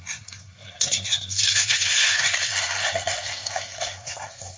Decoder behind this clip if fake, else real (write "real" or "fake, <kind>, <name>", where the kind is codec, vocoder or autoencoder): fake, codec, SNAC